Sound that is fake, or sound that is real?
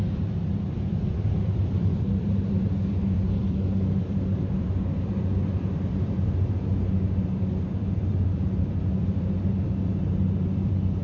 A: fake